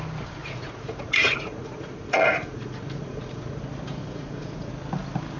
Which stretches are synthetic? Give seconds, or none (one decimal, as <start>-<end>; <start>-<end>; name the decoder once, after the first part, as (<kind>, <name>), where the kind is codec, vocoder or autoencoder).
0.4-3.6 (vocoder, Vocos); 4.0-4.7